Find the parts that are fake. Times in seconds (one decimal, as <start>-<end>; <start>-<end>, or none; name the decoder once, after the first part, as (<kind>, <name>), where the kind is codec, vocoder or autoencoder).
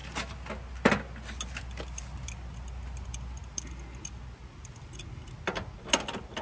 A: none